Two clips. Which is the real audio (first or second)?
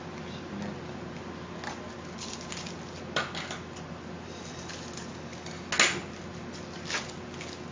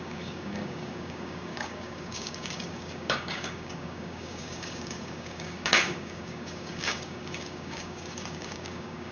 first